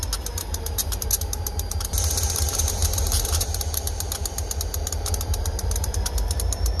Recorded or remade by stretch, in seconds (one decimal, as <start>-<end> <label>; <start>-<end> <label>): 0.0-6.8 remade